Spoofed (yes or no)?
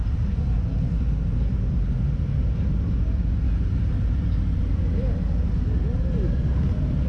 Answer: no